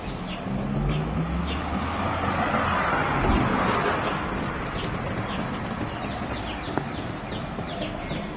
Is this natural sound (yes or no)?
yes